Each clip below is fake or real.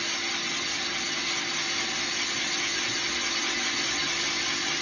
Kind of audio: real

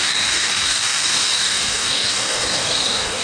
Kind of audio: fake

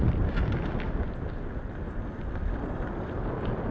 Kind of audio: real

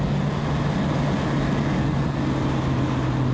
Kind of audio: real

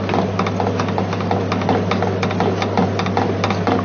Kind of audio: real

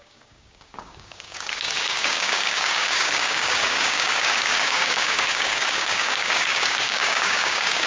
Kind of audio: fake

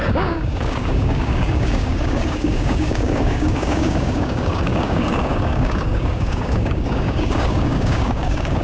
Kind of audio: fake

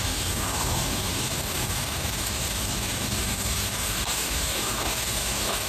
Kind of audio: fake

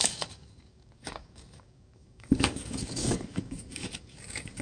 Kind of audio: fake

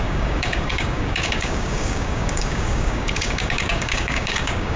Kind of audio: fake